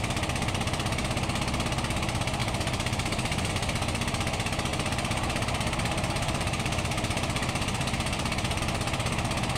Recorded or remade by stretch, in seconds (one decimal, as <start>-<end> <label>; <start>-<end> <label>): 0.0-2.4 recorded; 2.4-3.5 remade; 3.5-4.7 recorded; 4.7-8.6 remade; 8.6-9.6 recorded